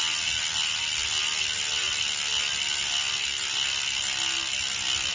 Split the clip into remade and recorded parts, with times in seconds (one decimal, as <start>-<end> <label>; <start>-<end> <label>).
0.0-5.1 recorded